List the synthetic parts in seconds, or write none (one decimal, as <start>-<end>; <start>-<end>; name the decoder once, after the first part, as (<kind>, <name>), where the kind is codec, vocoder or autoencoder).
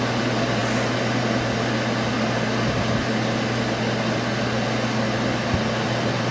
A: none